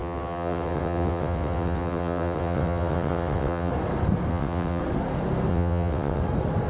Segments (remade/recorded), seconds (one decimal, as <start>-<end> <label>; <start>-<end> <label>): 0.0-3.7 remade; 3.7-4.3 recorded; 4.3-4.8 remade; 4.8-5.5 recorded; 5.5-6.2 remade; 6.2-6.7 recorded

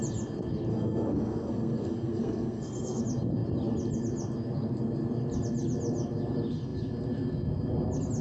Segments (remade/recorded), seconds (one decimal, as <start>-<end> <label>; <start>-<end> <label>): 0.0-0.7 recorded; 0.7-3.0 remade; 3.0-8.2 recorded

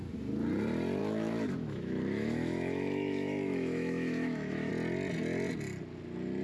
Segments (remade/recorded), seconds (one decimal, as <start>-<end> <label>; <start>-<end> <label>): 0.0-1.0 recorded; 1.0-4.7 remade; 4.7-6.4 recorded

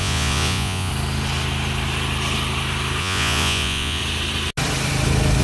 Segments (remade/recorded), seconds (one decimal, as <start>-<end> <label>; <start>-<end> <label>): 0.0-0.9 remade; 0.9-3.0 recorded; 3.0-4.0 remade; 4.0-5.4 recorded

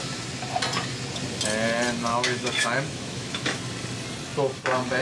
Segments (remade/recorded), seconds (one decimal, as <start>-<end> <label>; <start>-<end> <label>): 0.0-2.1 recorded; 2.1-3.6 remade; 3.6-5.0 recorded

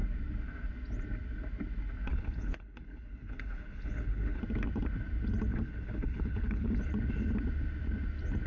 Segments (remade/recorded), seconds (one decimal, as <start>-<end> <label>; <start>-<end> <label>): 0.0-2.1 recorded; 2.1-4.4 remade; 4.4-5.5 recorded; 5.5-6.8 remade; 6.8-8.5 recorded